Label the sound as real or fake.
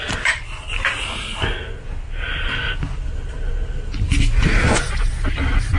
real